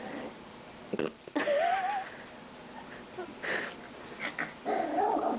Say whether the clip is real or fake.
real